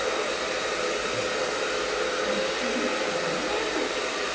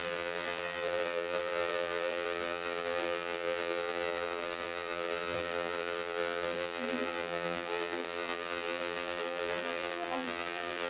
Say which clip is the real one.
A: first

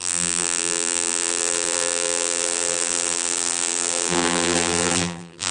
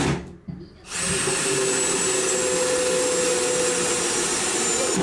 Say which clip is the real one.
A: second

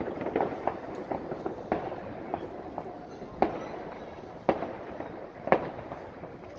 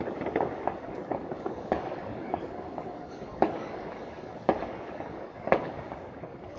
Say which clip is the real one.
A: first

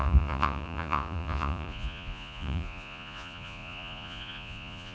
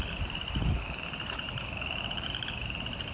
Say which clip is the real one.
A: second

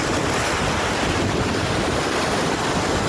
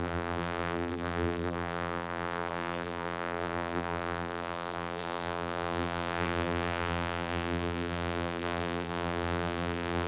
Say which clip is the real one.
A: first